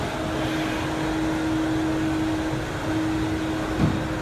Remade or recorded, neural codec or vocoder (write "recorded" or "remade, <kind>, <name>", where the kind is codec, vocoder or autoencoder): recorded